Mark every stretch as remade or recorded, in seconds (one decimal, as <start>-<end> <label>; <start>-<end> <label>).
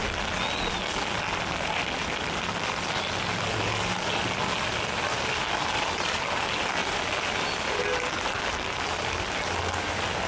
0.0-10.3 recorded